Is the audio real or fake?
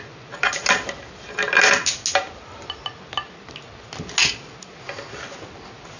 real